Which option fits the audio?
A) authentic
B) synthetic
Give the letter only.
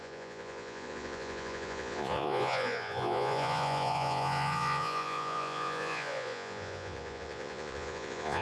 B